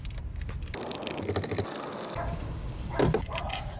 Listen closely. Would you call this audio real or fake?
real